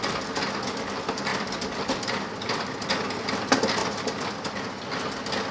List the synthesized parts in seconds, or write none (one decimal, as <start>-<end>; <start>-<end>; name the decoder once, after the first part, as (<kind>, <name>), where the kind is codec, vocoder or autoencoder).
3.8-4.3 (vocoder, BigVGAN v2)